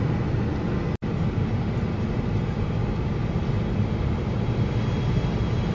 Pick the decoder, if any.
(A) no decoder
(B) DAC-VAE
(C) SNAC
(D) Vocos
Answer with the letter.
A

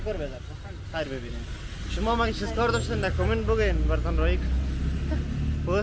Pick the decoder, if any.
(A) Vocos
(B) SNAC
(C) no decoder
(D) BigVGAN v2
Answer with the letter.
C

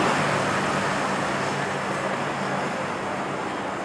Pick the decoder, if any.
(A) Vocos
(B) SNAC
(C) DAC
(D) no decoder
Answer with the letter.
D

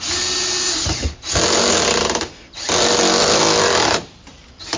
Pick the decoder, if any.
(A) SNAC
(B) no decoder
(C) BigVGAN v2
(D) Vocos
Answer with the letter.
B